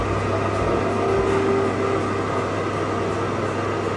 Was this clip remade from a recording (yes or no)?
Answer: no